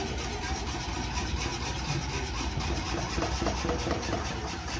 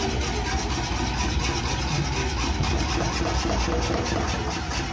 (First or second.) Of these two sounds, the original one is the second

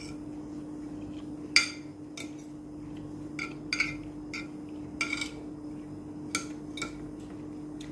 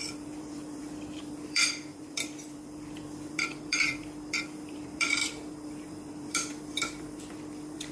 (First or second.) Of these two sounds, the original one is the first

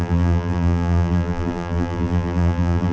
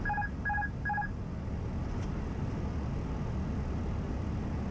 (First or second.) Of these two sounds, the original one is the second